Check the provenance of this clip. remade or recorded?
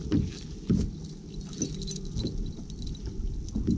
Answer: recorded